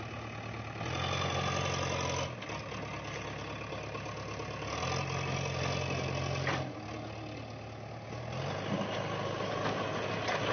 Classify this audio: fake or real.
real